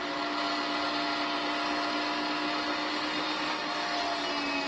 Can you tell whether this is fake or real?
real